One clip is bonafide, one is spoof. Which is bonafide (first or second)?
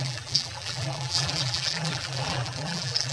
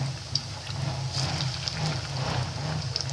second